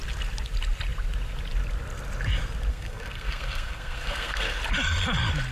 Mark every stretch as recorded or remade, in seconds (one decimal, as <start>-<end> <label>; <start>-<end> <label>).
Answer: 0.0-2.7 recorded; 2.7-4.6 remade; 4.6-5.5 recorded